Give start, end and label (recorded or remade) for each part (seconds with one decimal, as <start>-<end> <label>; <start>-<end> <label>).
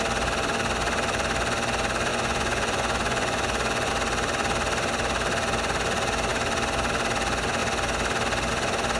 0.0-2.1 recorded; 2.1-3.9 remade; 3.9-9.0 recorded